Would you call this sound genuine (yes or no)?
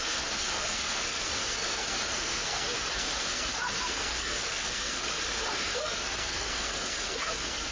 no